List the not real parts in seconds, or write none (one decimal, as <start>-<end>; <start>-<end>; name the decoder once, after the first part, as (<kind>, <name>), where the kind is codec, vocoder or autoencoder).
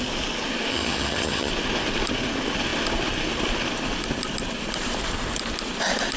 0.7-1.5 (vocoder, HiFi-GAN)